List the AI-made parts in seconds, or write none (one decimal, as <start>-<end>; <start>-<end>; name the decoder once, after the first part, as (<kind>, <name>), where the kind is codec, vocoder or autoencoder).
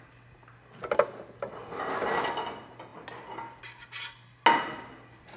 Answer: none